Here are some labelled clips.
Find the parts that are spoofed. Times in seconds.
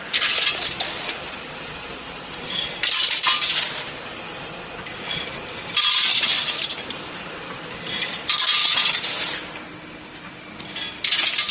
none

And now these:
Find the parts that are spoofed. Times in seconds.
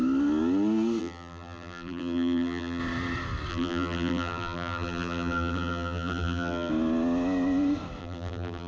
1.0-2.8 (vocoder, BigVGAN v2); 3.5-6.7; 8.0-8.7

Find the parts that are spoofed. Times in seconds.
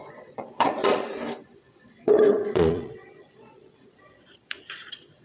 0.0-1.1 (vocoder, Vocos); 1.7-5.2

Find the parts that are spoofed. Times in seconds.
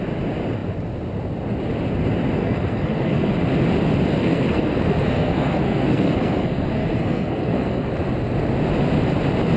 2.4-3.3 (codec, SNAC); 4.2-7.9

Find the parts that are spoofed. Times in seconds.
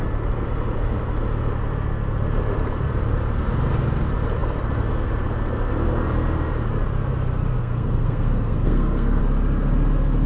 7.6-9.2 (codec, SNAC)